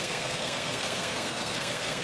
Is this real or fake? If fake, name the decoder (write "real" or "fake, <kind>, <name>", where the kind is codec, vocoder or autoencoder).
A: fake, codec, SNAC